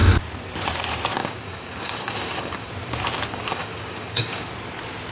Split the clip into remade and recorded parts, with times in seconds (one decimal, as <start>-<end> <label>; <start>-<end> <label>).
0.0-1.2 recorded; 1.2-2.7 remade; 2.7-3.3 recorded; 3.3-4.5 remade; 4.5-5.1 recorded